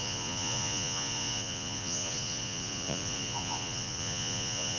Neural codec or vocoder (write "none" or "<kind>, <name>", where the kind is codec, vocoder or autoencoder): vocoder, Vocos